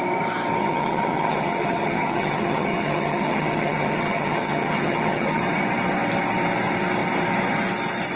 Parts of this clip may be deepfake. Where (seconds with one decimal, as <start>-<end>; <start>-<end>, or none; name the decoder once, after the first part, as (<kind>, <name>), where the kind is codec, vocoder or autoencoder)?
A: 0.6-5.4 (vocoder, HiFi-GAN)